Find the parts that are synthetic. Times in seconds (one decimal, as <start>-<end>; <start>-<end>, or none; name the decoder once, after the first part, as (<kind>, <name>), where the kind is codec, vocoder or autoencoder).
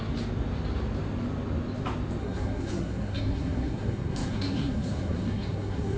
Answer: 2.2-6.0 (codec, SNAC)